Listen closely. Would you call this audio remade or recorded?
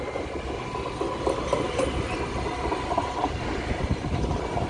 recorded